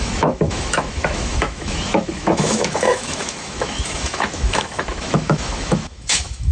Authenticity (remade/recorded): remade